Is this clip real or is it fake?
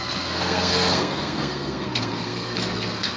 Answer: fake